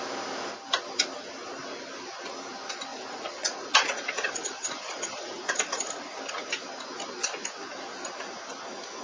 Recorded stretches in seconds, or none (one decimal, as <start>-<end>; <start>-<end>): 0.0-2.9; 6.2-9.0